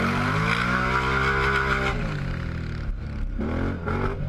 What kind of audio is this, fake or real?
real